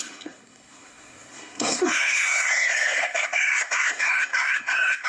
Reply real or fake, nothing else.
fake